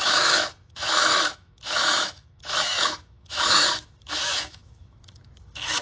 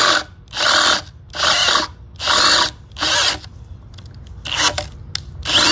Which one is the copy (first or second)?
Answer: first